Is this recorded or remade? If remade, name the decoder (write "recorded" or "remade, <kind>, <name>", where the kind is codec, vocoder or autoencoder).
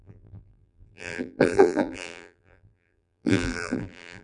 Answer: remade, vocoder, BigVGAN v2